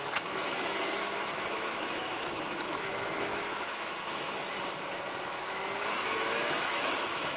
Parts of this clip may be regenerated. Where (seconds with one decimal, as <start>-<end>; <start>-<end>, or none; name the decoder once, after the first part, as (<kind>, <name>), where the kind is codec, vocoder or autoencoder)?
0.0-4.5 (autoencoder, DAC-VAE); 5.3-7.4